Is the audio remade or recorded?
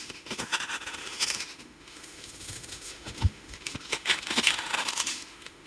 remade